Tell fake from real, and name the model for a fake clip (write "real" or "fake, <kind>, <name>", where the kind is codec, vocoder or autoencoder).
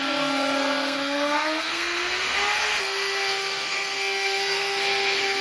fake, codec, SNAC